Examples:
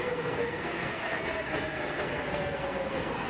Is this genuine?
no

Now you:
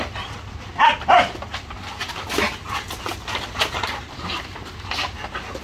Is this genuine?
yes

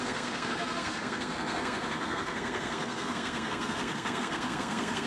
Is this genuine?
no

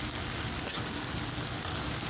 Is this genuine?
yes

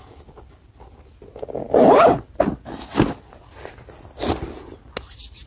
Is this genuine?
yes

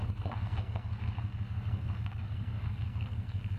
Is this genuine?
no